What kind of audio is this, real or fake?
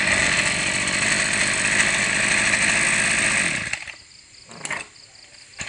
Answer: real